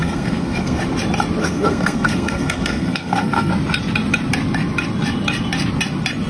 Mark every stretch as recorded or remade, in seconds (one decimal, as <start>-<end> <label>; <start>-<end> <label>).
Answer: 0.0-0.8 remade; 0.8-1.4 recorded; 1.4-3.5 remade; 3.5-6.3 recorded

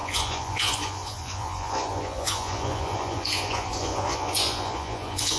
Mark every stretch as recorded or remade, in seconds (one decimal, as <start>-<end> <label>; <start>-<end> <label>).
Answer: 0.0-5.4 remade

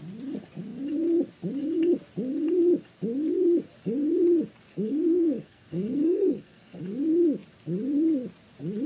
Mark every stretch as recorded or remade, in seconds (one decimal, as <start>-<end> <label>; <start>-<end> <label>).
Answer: 0.0-4.7 recorded; 4.7-6.8 remade; 6.8-8.9 recorded

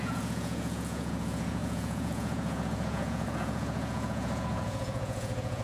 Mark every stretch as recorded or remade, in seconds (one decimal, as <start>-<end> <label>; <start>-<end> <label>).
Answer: 0.0-5.6 remade